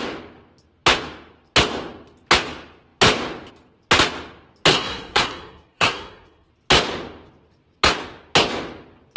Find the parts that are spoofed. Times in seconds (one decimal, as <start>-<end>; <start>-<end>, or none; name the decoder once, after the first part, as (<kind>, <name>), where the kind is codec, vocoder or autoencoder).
4.7-6.5 (codec, SNAC)